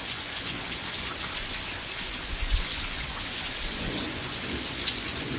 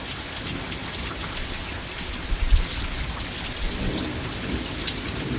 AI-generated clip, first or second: first